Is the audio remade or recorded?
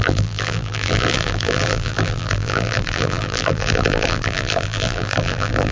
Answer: remade